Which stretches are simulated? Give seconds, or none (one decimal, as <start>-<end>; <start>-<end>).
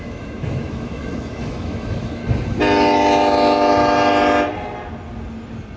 0.0-2.2